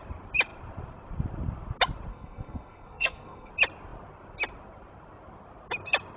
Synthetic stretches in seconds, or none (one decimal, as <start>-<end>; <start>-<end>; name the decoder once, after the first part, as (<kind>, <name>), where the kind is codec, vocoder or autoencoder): 2.1-3.5 (codec, SNAC)